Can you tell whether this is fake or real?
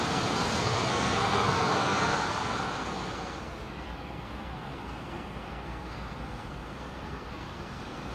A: fake